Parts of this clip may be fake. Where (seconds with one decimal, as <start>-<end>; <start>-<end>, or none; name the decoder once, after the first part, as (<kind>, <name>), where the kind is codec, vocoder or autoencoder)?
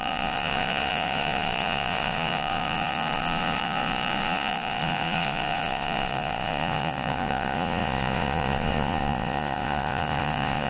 0.0-10.7 (vocoder, Vocos)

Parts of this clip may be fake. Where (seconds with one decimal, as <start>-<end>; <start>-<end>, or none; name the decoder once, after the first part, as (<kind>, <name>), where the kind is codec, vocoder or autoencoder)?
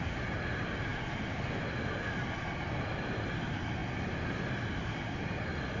none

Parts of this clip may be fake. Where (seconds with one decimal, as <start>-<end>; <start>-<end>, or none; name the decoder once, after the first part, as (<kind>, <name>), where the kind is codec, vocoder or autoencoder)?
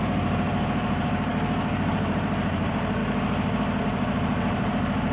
0.0-1.3 (vocoder, BigVGAN v2); 1.9-3.0; 3.8-5.1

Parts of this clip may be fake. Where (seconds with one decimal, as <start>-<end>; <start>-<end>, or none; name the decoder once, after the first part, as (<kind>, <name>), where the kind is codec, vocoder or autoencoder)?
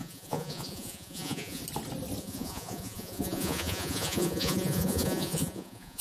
0.0-1.6 (vocoder, Vocos); 2.2-6.0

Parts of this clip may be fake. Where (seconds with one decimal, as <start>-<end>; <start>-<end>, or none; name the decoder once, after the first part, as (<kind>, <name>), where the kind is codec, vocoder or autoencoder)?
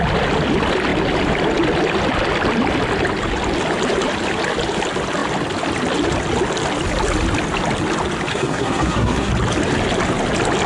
8.3-9.3 (codec, SNAC)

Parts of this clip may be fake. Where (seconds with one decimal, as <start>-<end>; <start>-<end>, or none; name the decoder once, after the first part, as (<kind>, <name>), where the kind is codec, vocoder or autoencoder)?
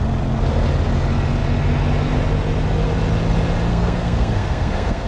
3.7-5.1 (codec, SNAC)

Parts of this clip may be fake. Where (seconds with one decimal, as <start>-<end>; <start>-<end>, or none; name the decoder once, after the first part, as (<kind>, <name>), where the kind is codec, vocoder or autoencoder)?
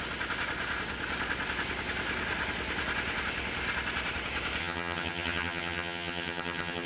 4.6-6.9 (vocoder, HiFi-GAN)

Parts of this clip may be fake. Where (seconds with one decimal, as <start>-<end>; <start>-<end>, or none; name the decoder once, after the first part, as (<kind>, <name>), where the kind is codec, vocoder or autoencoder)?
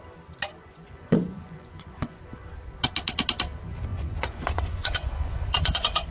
0.6-2.2 (vocoder, Vocos); 3.9-6.1